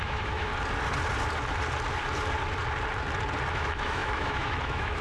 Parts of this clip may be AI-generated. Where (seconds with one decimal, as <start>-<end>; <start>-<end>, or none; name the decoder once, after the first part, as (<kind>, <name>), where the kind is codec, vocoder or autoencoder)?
0.0-0.5 (autoencoder, DAC-VAE); 3.5-5.0